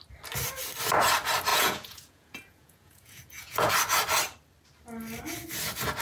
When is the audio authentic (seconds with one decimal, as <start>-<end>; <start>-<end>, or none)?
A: 0.0-1.5; 3.7-6.0